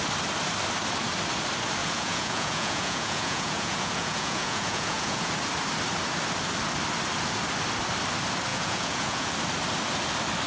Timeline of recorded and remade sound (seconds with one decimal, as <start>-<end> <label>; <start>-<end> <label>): 0.0-1.8 recorded; 1.8-5.3 remade; 5.3-8.5 recorded; 8.5-9.3 remade; 9.3-10.5 recorded